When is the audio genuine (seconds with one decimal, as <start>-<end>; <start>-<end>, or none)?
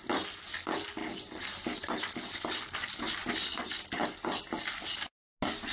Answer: 0.0-5.7